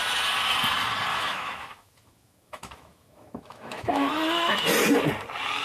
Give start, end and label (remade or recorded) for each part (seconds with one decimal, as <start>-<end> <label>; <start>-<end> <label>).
0.0-1.1 recorded; 1.1-4.5 remade; 4.5-5.6 recorded